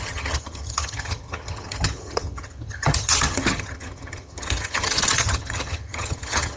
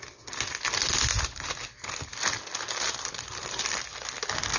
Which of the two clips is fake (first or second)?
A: first